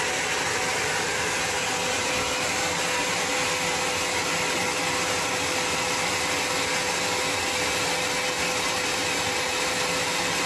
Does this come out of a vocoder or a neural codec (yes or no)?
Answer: no